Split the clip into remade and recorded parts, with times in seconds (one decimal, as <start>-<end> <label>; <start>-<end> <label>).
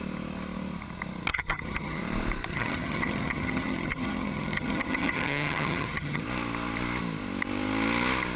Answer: 0.0-1.3 recorded; 1.3-2.0 remade; 2.0-2.5 recorded; 2.5-6.2 remade; 6.2-8.4 recorded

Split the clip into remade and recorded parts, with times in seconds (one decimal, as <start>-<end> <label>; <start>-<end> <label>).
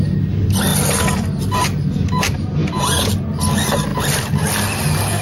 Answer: 0.0-2.6 recorded; 2.6-3.1 remade; 3.1-5.2 recorded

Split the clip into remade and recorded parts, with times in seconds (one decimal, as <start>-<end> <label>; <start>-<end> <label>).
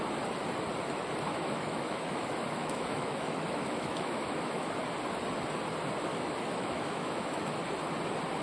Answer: 0.0-1.3 recorded; 1.3-4.7 remade; 4.7-6.1 recorded; 6.1-7.6 remade; 7.6-8.4 recorded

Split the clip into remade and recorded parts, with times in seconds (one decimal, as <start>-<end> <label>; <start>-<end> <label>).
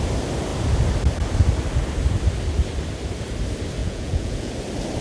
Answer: 0.0-3.8 recorded; 3.8-4.5 remade; 4.5-5.0 recorded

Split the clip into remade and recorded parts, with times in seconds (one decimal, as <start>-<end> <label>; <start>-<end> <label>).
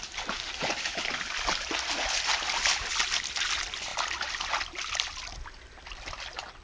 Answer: 0.0-6.6 recorded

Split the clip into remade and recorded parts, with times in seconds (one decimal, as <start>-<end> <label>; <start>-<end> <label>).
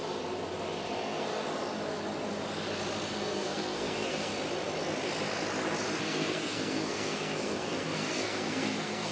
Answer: 0.0-0.9 recorded; 0.9-1.3 remade; 1.3-3.1 recorded; 3.1-4.3 remade; 4.3-6.0 recorded; 6.0-9.1 remade